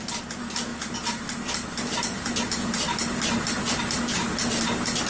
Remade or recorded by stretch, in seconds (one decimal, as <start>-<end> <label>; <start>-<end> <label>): 0.0-5.1 recorded